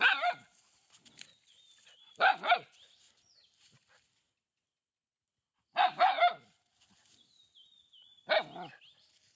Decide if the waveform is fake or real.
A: real